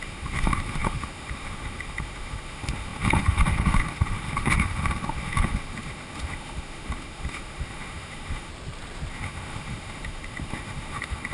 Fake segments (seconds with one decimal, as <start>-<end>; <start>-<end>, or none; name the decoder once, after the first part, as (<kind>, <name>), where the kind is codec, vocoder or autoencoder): 0.0-8.5 (autoencoder, DAC-VAE); 9.1-11.3